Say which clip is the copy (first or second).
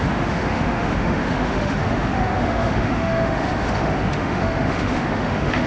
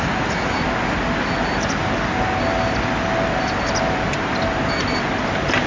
first